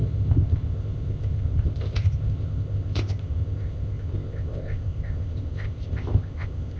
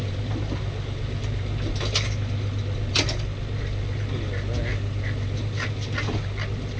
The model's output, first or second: first